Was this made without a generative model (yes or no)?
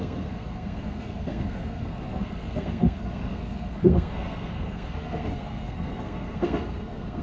no